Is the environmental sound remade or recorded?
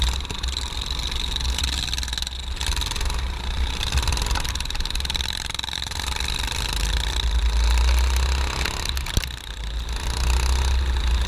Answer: recorded